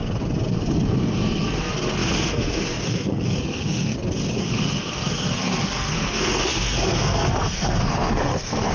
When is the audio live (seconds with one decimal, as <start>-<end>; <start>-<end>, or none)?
0.0-0.5; 3.9-4.4